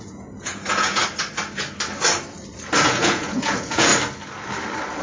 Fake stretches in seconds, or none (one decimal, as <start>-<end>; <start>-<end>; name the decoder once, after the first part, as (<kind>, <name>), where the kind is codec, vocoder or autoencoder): 0.0-1.0 (vocoder, Vocos); 2.8-3.9